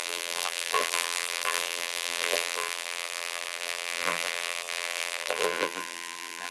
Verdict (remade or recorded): remade